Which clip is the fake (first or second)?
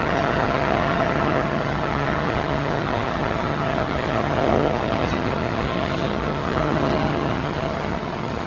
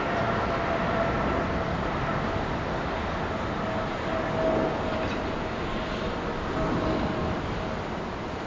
first